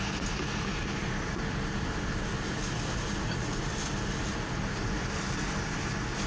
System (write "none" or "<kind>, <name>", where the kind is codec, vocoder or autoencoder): none